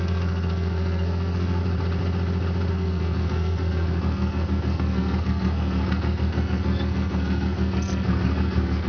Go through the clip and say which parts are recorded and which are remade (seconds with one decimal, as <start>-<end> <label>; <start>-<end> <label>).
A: 0.0-1.6 remade; 1.6-2.7 recorded; 2.7-8.9 remade